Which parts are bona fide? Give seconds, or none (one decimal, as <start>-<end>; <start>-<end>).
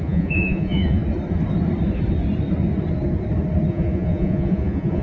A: 1.0-3.7